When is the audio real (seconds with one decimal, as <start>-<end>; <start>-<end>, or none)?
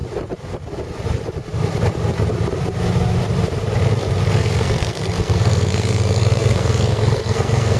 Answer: 0.0-4.3